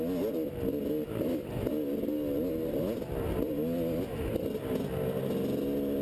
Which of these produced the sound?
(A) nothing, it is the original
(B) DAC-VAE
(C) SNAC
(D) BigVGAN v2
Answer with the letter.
A